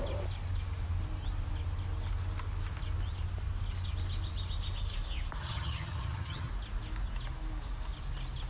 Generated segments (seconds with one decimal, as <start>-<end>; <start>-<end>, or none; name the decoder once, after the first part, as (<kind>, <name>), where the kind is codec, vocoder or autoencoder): 5.4-6.5 (vocoder, HiFi-GAN)

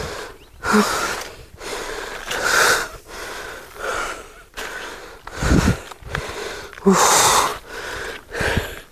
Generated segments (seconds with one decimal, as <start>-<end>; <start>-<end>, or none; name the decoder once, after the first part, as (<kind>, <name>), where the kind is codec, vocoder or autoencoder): 1.7-3.0 (vocoder, BigVGAN v2); 3.9-4.5

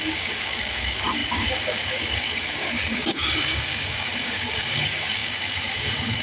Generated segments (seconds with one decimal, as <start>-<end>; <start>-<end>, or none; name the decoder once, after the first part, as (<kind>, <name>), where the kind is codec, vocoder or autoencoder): 0.0-6.2 (codec, DAC)

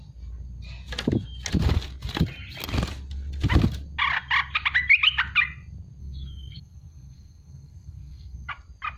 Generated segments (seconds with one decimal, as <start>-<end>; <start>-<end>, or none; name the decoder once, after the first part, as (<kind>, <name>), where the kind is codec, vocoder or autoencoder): 6.0-8.5 (codec, SNAC)

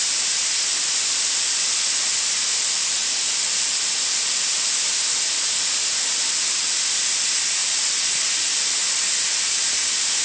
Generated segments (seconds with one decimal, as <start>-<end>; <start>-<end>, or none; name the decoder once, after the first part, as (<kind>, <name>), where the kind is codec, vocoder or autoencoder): none

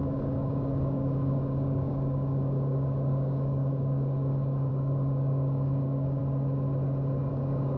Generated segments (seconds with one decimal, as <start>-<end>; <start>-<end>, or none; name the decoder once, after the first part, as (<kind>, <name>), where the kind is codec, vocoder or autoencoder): 0.0-6.2 (codec, DAC); 7.3-7.8

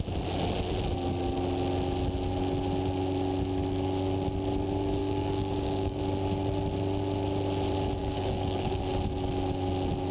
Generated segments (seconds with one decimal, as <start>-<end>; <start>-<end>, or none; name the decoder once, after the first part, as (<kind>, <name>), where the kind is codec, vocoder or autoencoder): 5.0-6.0 (codec, DAC); 8.0-8.8